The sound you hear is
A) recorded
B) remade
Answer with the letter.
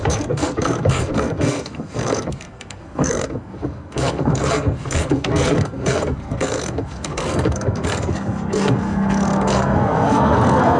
B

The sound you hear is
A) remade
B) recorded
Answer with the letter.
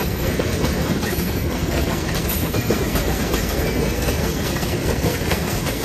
A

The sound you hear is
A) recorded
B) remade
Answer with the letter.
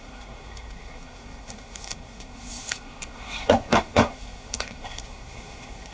B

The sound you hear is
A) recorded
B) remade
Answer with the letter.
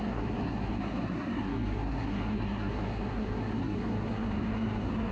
B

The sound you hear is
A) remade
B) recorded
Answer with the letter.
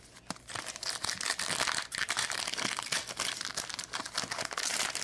B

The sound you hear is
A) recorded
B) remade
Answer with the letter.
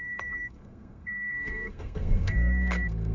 B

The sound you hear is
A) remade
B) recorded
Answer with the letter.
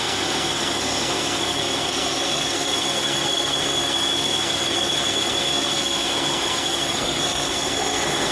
A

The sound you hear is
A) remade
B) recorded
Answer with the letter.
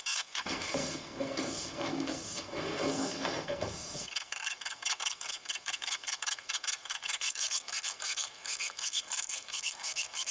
A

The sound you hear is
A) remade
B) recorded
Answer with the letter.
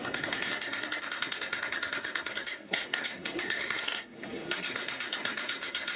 A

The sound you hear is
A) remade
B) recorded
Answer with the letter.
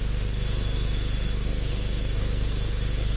A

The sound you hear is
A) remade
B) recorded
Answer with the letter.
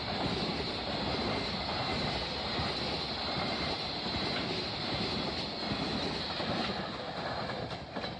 B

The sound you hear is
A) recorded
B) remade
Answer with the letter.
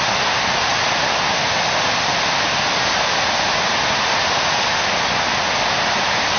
A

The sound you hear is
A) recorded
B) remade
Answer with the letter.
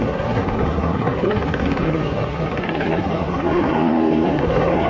B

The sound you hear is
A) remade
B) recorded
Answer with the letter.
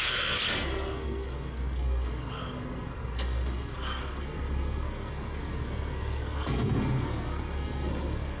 A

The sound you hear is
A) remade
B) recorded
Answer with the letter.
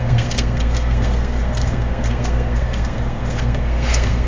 A